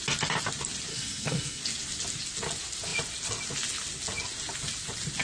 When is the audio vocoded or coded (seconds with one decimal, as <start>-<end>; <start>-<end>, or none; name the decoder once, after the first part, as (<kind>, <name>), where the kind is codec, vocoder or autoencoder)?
0.9-1.6 (codec, SNAC)